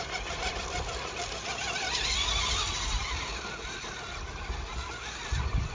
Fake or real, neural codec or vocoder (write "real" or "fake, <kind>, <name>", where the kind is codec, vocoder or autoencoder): real